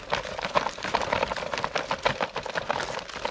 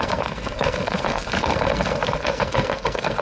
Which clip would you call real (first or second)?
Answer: first